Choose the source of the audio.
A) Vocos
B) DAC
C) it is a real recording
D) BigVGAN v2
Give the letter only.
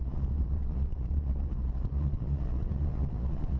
A